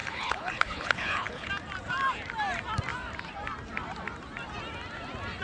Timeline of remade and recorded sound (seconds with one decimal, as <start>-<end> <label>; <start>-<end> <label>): 0.0-1.5 remade; 1.5-5.4 recorded

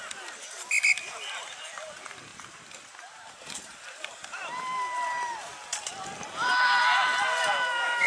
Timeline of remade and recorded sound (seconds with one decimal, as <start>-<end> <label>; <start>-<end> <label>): 0.0-8.1 recorded